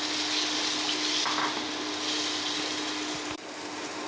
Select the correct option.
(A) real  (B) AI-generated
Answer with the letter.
A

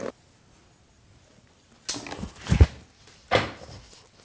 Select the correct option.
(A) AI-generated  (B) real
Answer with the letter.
B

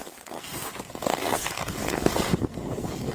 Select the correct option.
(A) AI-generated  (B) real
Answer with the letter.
A